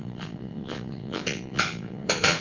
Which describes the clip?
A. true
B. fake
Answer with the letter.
B